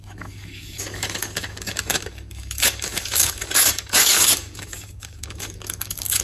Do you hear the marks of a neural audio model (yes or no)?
yes